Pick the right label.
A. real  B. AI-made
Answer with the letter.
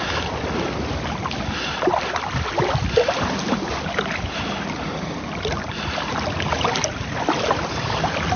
A